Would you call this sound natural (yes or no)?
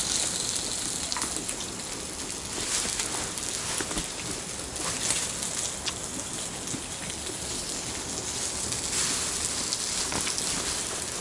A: yes